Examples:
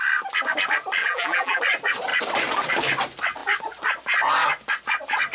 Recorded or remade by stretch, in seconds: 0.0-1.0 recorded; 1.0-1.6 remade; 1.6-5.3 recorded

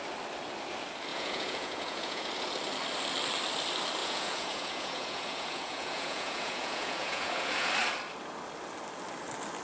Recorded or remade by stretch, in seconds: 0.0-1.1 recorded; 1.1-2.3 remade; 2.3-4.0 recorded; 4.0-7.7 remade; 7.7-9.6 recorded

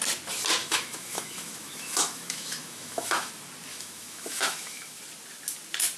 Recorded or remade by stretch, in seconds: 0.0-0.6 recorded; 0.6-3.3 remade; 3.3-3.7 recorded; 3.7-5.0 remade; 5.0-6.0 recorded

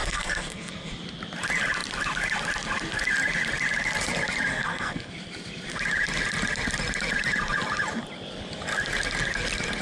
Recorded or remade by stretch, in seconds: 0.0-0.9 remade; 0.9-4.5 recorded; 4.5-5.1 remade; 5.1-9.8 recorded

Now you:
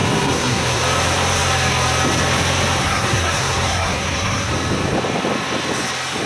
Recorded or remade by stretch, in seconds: 0.0-0.8 remade; 0.8-2.8 recorded; 2.8-4.5 remade; 4.5-6.3 recorded